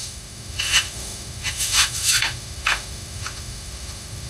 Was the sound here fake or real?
fake